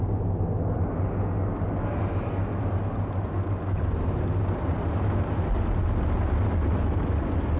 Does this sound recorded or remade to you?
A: recorded